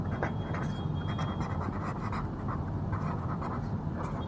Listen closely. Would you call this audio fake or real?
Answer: real